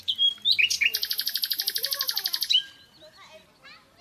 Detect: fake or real real